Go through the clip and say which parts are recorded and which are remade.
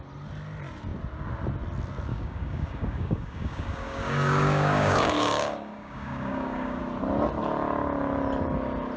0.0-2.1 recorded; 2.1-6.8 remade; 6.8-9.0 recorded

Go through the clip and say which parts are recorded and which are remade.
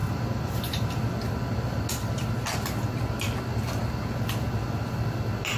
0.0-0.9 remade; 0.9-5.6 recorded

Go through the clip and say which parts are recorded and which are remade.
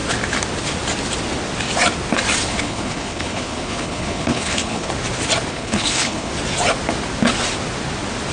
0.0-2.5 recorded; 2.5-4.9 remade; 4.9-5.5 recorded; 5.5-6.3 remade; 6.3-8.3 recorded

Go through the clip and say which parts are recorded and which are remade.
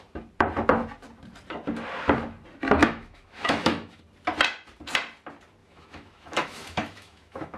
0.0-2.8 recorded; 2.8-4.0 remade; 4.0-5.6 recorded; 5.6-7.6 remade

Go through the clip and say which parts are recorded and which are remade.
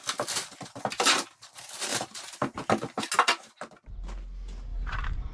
0.0-1.9 recorded; 1.9-3.1 remade; 3.1-4.7 recorded; 4.7-5.3 remade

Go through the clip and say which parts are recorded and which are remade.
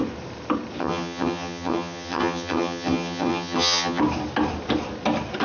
0.0-0.8 recorded; 0.8-4.0 remade; 4.0-5.4 recorded